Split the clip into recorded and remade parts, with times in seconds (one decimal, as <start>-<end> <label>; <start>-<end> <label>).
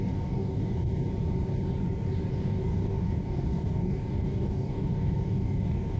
0.0-0.9 remade; 0.9-2.3 recorded; 2.3-6.0 remade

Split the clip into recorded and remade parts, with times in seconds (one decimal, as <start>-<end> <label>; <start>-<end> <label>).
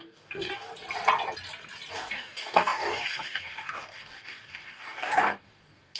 0.0-0.7 remade; 0.7-1.9 recorded; 1.9-6.0 remade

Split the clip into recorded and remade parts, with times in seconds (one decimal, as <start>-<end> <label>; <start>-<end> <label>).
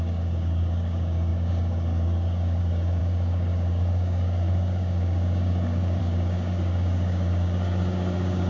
0.0-8.5 remade